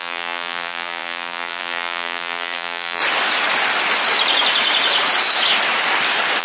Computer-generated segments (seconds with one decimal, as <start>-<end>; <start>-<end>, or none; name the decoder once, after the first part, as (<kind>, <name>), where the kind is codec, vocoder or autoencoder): 0.0-3.0 (vocoder, BigVGAN v2)